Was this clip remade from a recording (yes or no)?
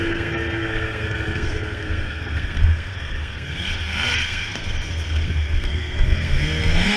yes